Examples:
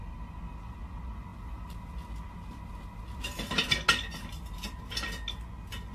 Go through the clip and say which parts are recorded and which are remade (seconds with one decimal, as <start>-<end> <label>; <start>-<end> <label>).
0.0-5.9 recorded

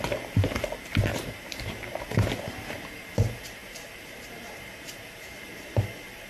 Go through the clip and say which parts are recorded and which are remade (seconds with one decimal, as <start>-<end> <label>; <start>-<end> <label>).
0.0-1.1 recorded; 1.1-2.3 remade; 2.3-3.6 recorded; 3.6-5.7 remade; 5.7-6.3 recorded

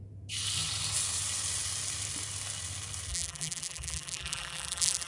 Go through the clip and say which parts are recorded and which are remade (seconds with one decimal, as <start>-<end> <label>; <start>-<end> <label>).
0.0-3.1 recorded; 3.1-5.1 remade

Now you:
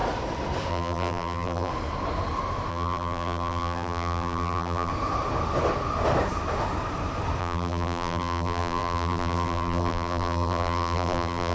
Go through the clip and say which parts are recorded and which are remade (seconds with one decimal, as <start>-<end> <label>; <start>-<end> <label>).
0.0-0.7 recorded; 0.7-1.7 remade; 1.7-2.7 recorded; 2.7-4.9 remade; 4.9-7.4 recorded; 7.4-11.5 remade

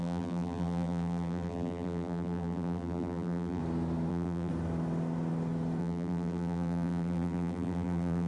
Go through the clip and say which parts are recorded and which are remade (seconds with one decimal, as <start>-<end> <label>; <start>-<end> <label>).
0.0-3.6 remade; 3.6-4.1 recorded; 4.1-4.5 remade; 4.5-5.8 recorded; 5.8-8.3 remade

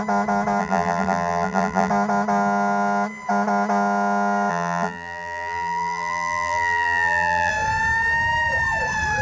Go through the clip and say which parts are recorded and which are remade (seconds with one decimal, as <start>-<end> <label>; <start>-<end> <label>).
0.0-0.6 recorded; 0.6-1.9 remade; 1.9-4.5 recorded; 4.5-7.5 remade; 7.5-9.2 recorded